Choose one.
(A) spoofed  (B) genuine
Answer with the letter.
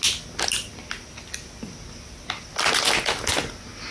B